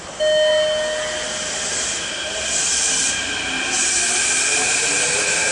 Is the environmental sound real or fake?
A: real